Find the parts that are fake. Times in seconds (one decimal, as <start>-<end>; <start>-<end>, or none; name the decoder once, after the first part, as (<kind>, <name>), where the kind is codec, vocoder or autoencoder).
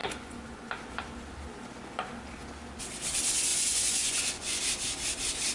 0.0-0.7 (vocoder, Vocos); 3.5-4.6